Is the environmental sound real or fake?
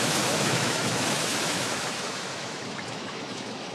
fake